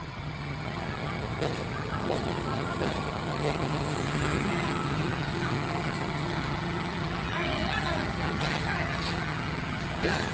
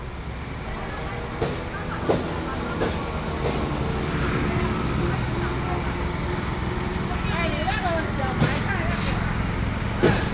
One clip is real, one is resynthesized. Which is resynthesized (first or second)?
first